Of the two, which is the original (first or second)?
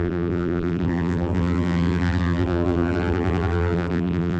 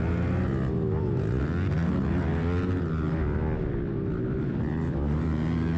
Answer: second